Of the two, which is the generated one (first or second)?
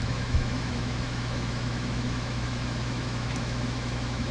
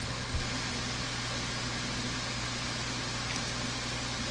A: first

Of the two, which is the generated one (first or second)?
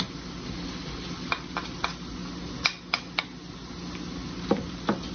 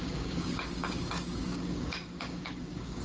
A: second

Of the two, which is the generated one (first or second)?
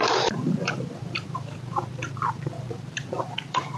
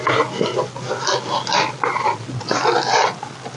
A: first